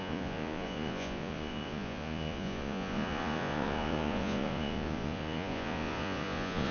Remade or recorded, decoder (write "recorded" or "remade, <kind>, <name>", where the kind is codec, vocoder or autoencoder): remade, vocoder, Vocos